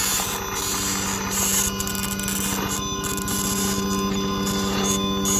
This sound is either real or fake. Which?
real